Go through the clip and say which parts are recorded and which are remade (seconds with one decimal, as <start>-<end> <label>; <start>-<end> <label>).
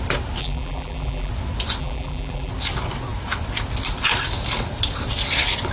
0.0-0.4 recorded; 0.4-1.3 remade; 1.3-1.8 recorded; 1.8-2.5 remade; 2.5-5.7 recorded